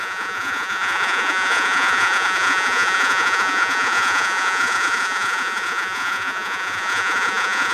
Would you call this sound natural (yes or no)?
no